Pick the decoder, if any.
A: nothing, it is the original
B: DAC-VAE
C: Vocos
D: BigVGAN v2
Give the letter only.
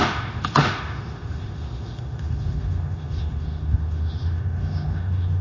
B